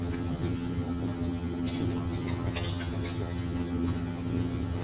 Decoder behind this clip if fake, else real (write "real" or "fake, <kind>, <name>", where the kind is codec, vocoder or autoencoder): fake, vocoder, HiFi-GAN